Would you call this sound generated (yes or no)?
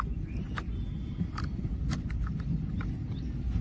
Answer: no